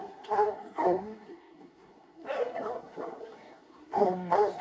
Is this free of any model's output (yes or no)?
no